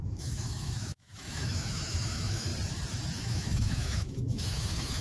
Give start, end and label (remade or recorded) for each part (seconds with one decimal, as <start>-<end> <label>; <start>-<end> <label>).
0.0-2.5 remade; 2.5-3.2 recorded; 3.2-5.0 remade